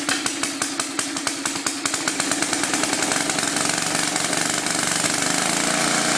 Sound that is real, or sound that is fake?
real